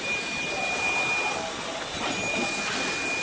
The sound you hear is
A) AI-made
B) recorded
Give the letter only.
B